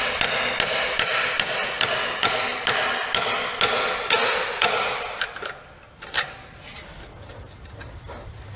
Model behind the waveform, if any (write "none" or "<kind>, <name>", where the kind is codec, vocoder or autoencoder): none